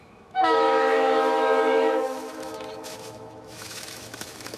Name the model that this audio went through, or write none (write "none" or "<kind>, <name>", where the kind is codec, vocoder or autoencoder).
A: autoencoder, DAC-VAE